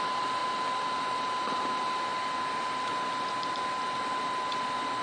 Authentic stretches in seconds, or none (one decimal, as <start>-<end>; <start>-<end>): 0.4-1.0; 2.1-3.3